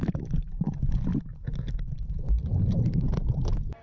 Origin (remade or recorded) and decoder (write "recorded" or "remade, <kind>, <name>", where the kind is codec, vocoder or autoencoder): recorded